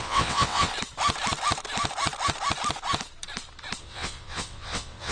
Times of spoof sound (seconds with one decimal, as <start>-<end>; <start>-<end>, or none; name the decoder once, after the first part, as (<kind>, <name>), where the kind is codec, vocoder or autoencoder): 0.0-0.7 (vocoder, WaveNeXt); 3.8-5.1